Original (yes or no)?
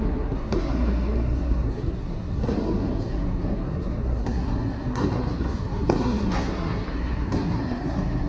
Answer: no